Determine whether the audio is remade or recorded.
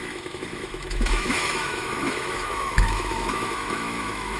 remade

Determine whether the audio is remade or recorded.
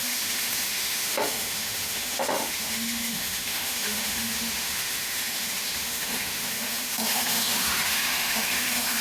remade